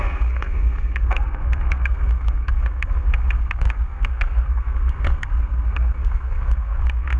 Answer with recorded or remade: remade